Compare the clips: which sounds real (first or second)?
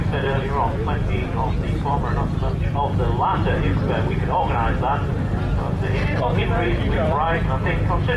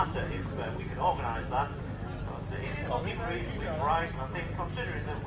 second